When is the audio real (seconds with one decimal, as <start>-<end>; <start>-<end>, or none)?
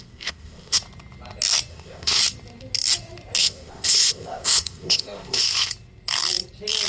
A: 0.8-1.7; 2.2-3.4; 5.7-6.9